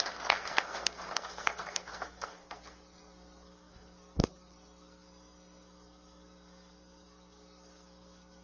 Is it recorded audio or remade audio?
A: remade